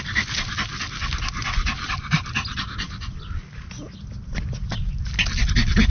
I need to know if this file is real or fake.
real